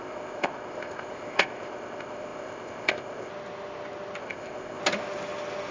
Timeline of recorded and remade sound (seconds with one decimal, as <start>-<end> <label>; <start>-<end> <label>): 0.0-3.3 remade; 3.3-4.2 recorded; 4.2-4.8 remade; 4.8-5.7 recorded